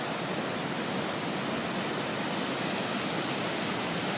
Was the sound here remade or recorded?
recorded